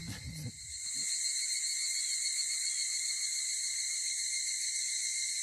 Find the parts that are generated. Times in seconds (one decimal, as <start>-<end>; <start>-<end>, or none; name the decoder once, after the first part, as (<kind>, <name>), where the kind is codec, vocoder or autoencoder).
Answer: none